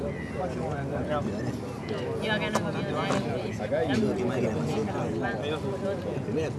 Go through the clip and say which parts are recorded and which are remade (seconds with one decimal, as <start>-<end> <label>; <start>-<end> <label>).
0.0-6.6 recorded